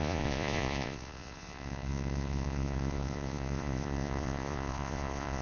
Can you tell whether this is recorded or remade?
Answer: remade